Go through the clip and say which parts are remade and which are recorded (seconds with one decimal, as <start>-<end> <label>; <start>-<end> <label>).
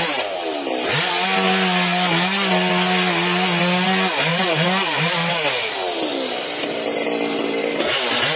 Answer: 0.0-4.3 recorded; 4.3-5.3 remade; 5.3-8.4 recorded